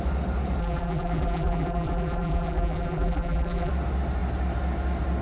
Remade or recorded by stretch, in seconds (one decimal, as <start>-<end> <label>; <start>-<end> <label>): 0.0-0.6 recorded; 0.6-3.7 remade; 3.7-5.2 recorded